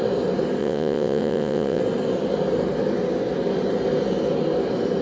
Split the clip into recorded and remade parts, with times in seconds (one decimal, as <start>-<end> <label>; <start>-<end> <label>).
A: 0.0-0.6 recorded; 0.6-1.8 remade; 1.8-5.0 recorded